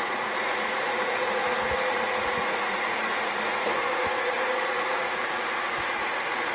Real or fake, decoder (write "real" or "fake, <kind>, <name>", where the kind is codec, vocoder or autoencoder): fake, vocoder, Vocos